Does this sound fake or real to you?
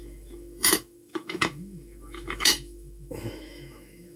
fake